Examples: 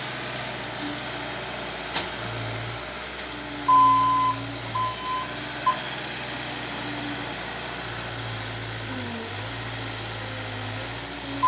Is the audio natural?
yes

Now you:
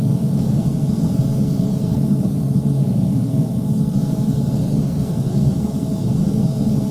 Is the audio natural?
no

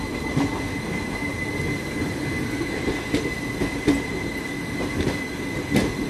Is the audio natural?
yes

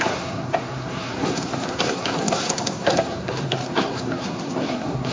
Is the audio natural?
no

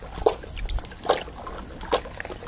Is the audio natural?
yes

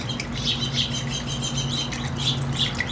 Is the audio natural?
yes